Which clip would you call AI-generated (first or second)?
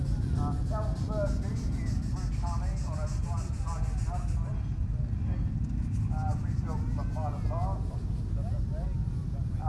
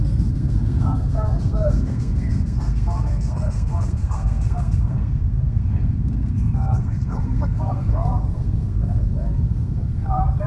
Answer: second